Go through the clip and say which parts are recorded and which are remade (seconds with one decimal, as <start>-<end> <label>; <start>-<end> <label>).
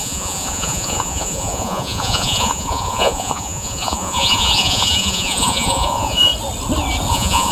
0.0-6.3 remade; 6.3-7.1 recorded; 7.1-7.5 remade